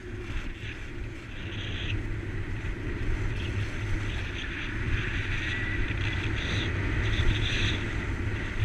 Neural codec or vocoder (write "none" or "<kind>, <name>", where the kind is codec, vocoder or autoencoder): none